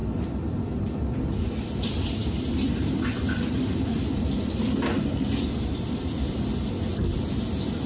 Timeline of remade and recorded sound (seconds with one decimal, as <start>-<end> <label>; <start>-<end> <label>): 0.0-0.8 remade; 0.8-2.2 recorded; 2.2-6.6 remade; 6.6-7.9 recorded